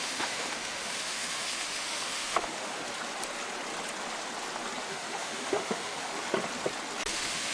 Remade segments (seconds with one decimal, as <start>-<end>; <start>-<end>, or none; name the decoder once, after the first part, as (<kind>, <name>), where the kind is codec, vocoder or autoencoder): 0.0-2.8 (autoencoder, DAC-VAE); 4.8-6.1; 7.1-7.5